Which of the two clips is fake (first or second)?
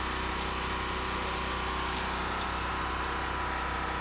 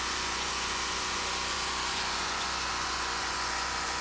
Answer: second